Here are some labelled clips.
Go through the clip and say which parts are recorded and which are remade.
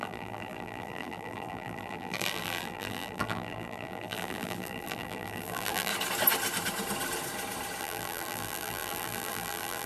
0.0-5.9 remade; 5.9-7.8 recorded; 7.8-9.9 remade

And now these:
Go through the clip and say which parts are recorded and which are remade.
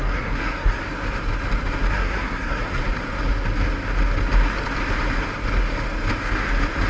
0.0-0.8 remade; 0.8-1.9 recorded; 1.9-2.8 remade; 2.8-6.9 recorded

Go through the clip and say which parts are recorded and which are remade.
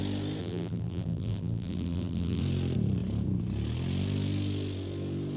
0.0-0.4 recorded; 0.4-2.4 remade; 2.4-5.4 recorded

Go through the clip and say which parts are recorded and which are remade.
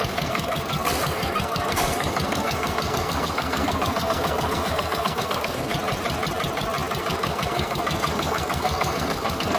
0.0-5.7 remade; 5.7-7.0 recorded; 7.0-9.6 remade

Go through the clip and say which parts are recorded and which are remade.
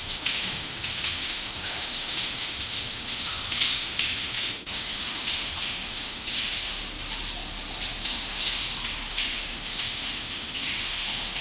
0.0-6.8 remade; 6.8-8.0 recorded; 8.0-8.6 remade; 8.6-9.1 recorded; 9.1-11.4 remade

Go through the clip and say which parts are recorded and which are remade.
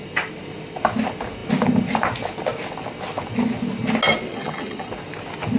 0.0-4.3 recorded; 4.3-4.9 remade; 4.9-5.6 recorded